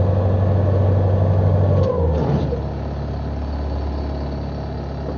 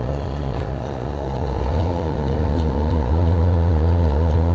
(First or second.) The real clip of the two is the first